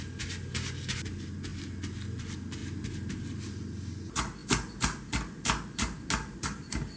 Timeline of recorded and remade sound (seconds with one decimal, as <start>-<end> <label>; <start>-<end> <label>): 0.0-7.0 recorded